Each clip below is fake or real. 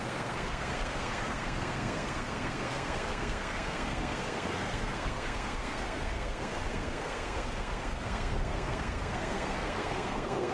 fake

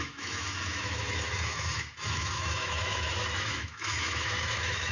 fake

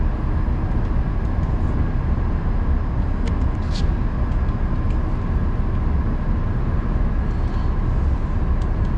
real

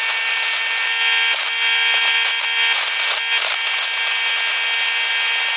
real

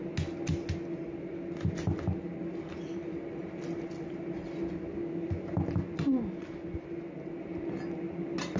real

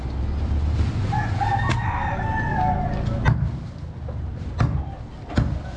real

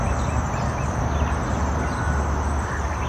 real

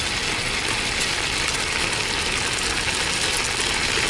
real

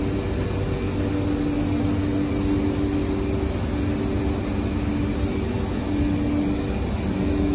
real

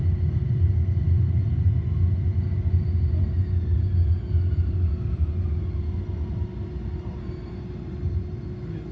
real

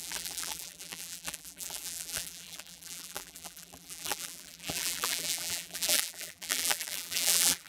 fake